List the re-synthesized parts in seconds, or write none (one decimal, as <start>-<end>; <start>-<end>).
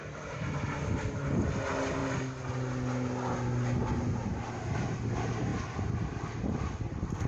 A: none